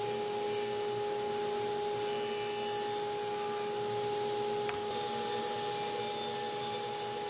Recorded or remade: recorded